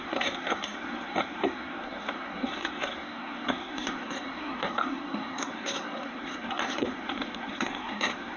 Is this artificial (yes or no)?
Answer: yes